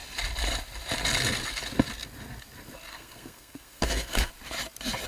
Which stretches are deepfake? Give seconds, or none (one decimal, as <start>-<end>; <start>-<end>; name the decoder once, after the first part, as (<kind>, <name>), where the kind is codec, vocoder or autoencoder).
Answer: 2.9-4.3 (codec, SNAC)